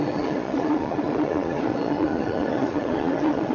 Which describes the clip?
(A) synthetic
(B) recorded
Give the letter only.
A